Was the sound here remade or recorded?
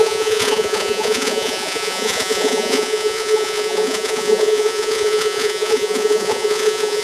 remade